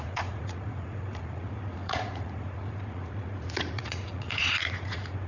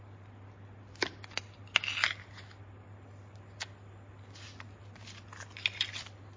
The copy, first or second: first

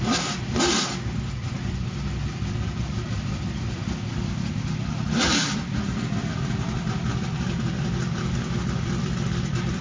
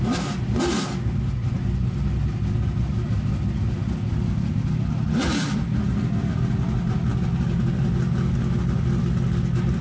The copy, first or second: first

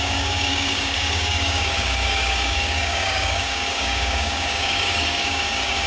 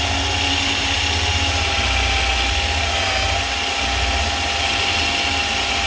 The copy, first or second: first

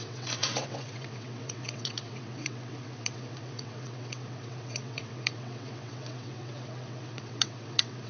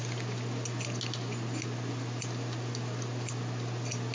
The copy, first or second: first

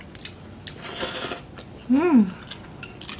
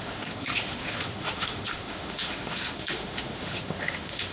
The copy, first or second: second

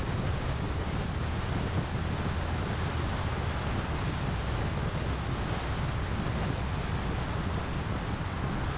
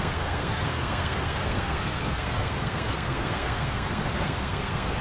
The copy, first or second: second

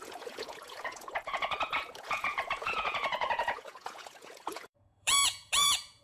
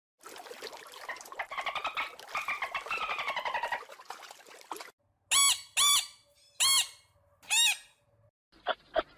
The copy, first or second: first